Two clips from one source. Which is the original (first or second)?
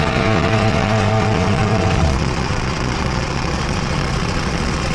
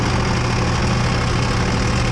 second